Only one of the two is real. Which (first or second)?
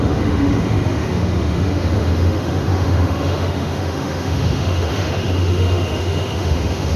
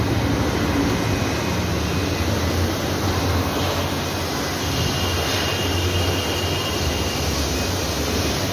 second